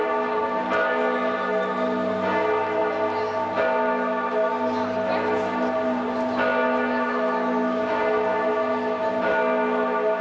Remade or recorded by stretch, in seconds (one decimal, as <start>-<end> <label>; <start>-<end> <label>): 0.0-10.2 recorded